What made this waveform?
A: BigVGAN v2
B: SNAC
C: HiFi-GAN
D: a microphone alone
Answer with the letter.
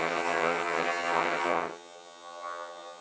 C